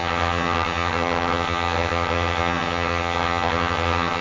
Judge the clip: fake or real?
fake